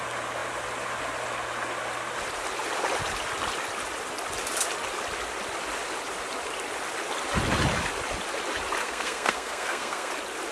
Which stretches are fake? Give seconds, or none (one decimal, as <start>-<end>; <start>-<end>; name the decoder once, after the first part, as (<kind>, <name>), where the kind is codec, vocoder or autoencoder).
8.8-10.1 (codec, SNAC)